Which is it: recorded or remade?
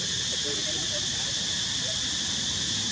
recorded